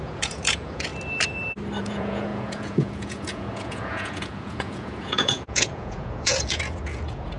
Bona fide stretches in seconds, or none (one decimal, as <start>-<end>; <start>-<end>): 0.9-1.8